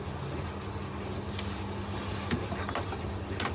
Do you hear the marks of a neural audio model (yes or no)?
no